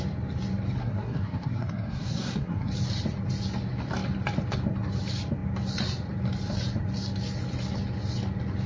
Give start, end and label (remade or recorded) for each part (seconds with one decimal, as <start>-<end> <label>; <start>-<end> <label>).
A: 0.0-0.8 recorded; 0.8-2.7 remade; 2.7-8.7 recorded